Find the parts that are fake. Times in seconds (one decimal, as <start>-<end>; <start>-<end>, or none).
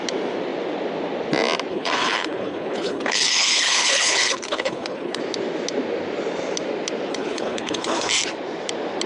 1.7-5.2; 7.1-8.1